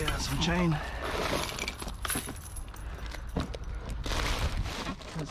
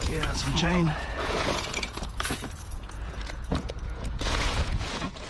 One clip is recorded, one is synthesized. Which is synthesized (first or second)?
second